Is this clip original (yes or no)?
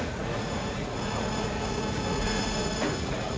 no